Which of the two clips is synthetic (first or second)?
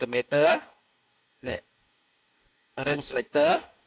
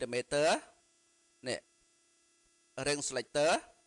first